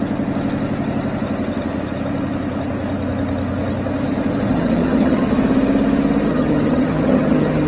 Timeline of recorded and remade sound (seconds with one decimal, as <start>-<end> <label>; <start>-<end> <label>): 0.0-4.5 recorded; 4.5-5.3 remade; 5.3-6.3 recorded; 6.3-7.7 remade